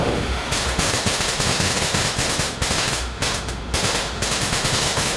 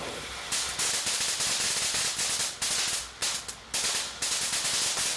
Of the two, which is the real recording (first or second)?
second